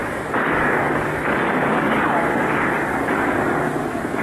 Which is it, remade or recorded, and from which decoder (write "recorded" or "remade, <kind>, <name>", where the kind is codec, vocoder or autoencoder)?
remade, codec, DAC